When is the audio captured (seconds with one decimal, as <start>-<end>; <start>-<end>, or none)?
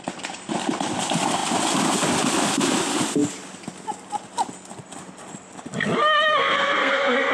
0.0-6.3